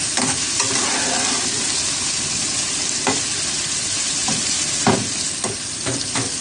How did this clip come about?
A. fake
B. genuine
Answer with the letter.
A